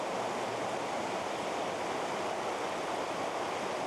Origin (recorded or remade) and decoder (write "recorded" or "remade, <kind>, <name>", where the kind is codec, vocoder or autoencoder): recorded